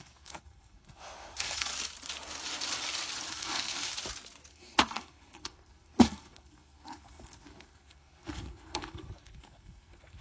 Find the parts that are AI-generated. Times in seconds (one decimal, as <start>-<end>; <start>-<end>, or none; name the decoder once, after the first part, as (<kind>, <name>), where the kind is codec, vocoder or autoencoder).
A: 0.0-1.7 (codec, SNAC); 3.3-3.9; 4.5-10.2